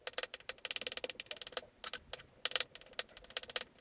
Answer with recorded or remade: recorded